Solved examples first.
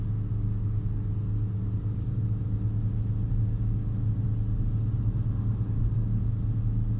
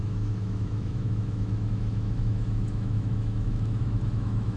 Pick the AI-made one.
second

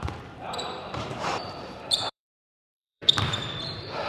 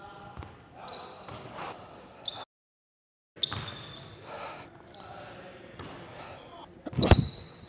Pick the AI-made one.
first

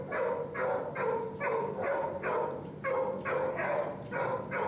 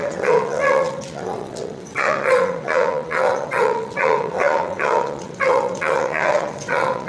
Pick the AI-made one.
second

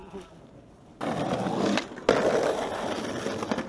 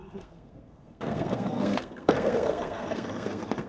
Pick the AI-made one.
second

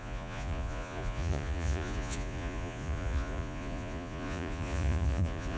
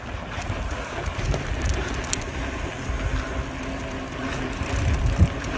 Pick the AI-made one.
first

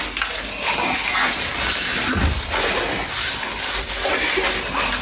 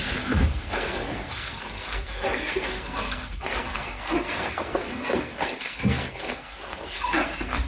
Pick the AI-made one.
second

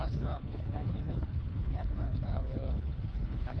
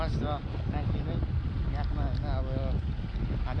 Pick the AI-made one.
first